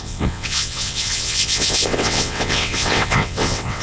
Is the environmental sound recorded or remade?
remade